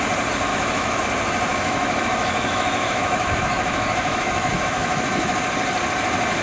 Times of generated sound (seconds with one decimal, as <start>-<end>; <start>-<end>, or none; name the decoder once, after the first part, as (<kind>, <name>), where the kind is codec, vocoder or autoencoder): 0.5-1.0 (autoencoder, DAC-VAE); 1.5-5.3